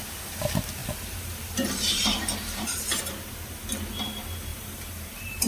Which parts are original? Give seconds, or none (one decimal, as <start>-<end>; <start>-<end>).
0.0-0.8; 3.1-4.5

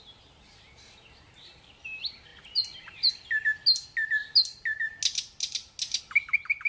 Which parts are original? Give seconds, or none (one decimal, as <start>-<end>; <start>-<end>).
0.0-6.7